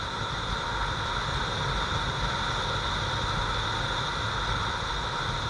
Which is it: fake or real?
real